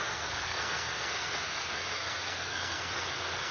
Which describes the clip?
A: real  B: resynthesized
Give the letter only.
B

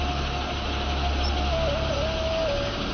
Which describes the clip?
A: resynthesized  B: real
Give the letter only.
B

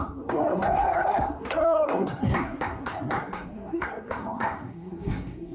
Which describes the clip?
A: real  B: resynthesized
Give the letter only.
B